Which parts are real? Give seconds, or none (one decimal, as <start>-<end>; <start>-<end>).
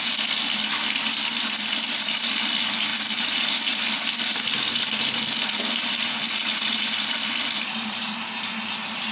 0.0-9.1